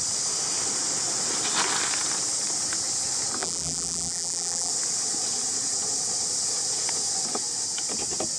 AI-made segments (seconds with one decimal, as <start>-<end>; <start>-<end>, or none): 3.4-4.7